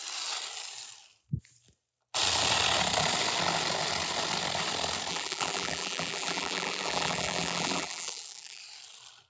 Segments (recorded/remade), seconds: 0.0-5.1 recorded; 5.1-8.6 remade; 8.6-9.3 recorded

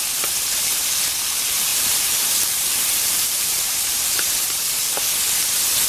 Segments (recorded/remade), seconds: 0.0-1.7 recorded; 1.7-5.0 remade; 5.0-5.9 recorded

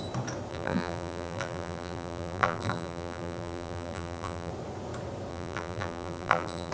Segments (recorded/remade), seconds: 0.0-0.5 recorded; 0.5-4.5 remade; 4.5-5.3 recorded; 5.3-6.7 remade

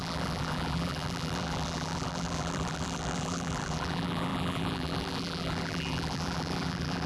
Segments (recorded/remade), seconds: 0.0-7.1 remade